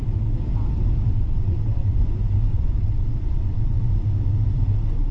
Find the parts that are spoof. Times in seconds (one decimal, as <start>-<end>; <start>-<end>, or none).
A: 1.1-2.0; 2.5-3.9